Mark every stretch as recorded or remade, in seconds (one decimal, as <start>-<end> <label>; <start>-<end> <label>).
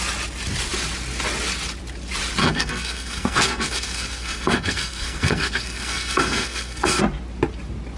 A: 0.0-2.4 recorded; 2.4-7.0 remade; 7.0-8.0 recorded